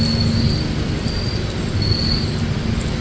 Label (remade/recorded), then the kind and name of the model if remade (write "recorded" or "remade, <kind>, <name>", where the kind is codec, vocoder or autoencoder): recorded